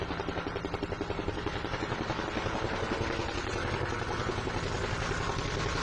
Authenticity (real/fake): real